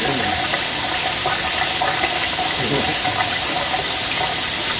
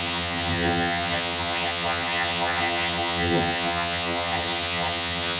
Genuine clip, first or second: first